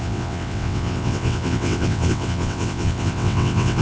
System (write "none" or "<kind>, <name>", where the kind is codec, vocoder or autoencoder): vocoder, WaveNeXt